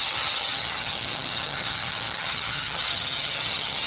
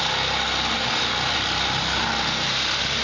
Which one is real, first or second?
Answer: second